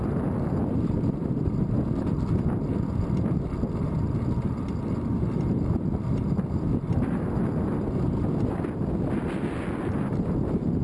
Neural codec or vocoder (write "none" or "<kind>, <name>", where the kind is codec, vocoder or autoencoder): none